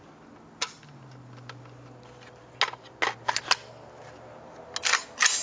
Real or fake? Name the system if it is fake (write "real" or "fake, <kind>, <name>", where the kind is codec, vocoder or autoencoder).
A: real